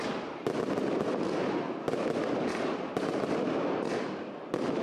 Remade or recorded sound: recorded